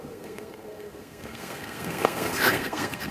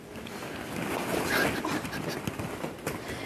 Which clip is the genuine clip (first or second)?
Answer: second